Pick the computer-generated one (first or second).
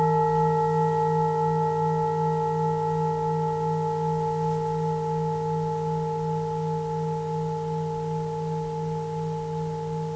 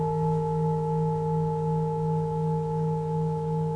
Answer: second